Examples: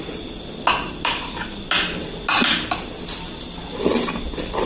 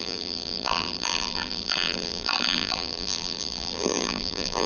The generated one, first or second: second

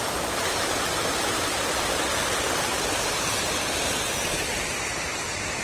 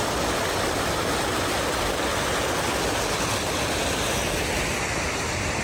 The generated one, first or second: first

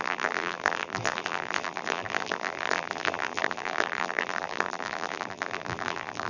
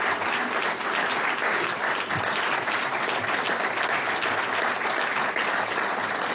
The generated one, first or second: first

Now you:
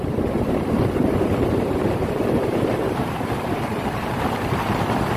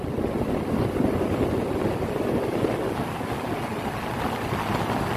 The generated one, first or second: first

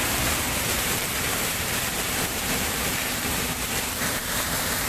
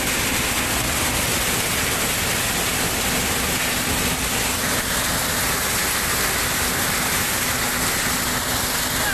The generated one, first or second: first